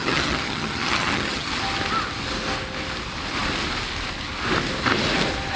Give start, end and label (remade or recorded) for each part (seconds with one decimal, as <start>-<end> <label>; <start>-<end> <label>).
0.0-1.5 remade; 1.5-5.6 recorded